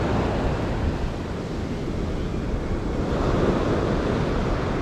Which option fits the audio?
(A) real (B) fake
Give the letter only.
A